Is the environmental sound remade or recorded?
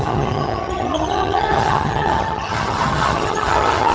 remade